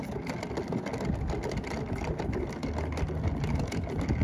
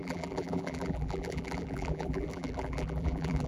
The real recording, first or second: first